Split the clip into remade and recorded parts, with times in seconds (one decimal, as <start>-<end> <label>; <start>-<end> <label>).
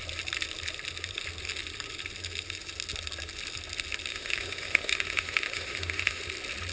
0.0-4.1 recorded; 4.1-6.2 remade; 6.2-6.7 recorded